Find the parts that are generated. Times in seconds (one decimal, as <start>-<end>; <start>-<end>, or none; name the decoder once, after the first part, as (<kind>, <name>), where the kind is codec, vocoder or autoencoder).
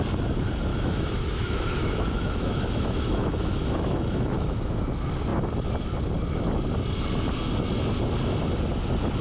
0.7-4.6 (autoencoder, DAC-VAE)